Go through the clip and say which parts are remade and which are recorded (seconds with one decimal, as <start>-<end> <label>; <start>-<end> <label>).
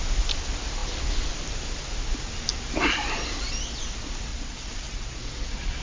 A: 0.0-4.3 recorded; 4.3-5.8 remade